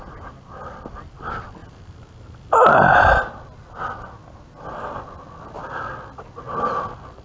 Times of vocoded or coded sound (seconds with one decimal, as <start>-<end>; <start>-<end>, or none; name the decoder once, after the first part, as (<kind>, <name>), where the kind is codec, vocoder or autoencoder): none